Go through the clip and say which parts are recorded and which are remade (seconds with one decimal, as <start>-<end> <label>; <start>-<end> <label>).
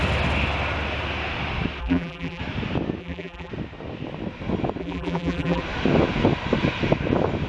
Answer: 0.0-1.8 recorded; 1.8-2.4 remade; 2.4-3.0 recorded; 3.0-3.5 remade; 3.5-4.8 recorded; 4.8-5.6 remade; 5.6-7.5 recorded